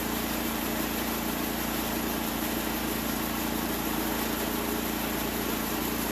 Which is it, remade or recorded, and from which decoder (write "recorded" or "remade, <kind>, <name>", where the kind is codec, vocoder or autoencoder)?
remade, vocoder, BigVGAN v2